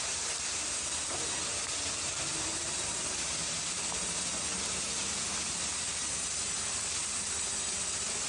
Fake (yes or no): no